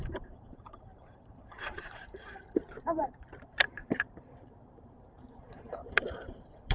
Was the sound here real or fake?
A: fake